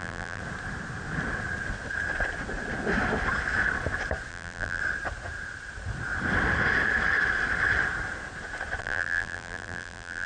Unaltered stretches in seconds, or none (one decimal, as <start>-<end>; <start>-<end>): 0.4-4.3; 4.8-8.8